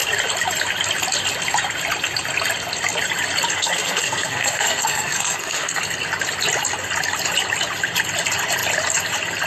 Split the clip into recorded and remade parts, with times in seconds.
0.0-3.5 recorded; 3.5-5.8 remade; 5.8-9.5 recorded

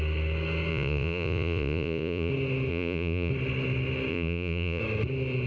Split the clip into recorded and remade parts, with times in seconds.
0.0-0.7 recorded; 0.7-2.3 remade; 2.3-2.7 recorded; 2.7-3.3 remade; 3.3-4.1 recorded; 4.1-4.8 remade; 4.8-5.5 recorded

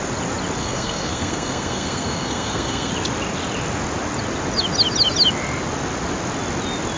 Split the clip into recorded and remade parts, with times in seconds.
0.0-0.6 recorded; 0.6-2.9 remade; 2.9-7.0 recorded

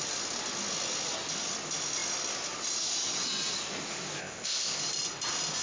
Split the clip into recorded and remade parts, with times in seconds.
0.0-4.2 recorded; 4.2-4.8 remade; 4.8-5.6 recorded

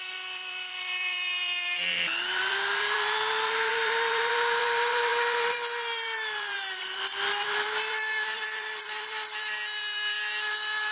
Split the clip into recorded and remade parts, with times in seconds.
0.0-10.9 remade

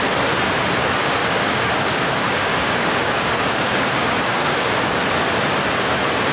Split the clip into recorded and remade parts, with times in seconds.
0.0-1.2 recorded; 1.2-5.0 remade; 5.0-6.3 recorded